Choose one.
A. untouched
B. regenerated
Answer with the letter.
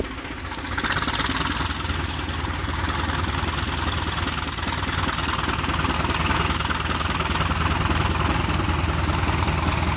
A